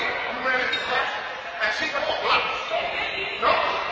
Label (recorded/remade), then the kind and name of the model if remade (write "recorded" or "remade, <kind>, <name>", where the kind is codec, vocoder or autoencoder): recorded